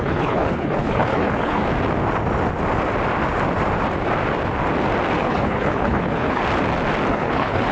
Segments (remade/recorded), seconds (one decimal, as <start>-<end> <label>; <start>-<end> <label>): 0.0-1.6 remade; 1.6-5.2 recorded; 5.2-6.4 remade; 6.4-7.1 recorded; 7.1-7.7 remade